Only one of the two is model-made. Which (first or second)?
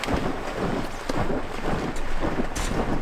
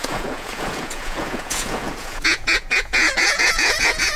second